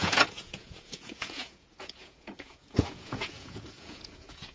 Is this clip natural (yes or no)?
no